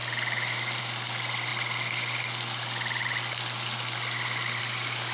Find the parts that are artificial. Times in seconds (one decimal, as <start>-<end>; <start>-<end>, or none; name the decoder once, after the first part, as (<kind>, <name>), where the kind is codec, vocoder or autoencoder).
none